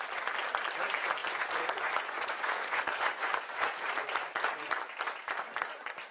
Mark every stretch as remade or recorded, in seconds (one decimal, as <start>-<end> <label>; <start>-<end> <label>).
0.0-1.2 recorded; 1.2-3.9 remade; 3.9-6.1 recorded